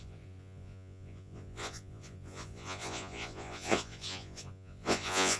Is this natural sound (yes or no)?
no